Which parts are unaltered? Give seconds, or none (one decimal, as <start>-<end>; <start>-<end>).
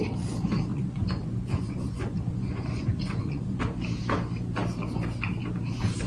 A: 0.0-0.7; 3.6-6.1